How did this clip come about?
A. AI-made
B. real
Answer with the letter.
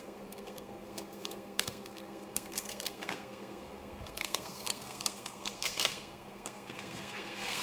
A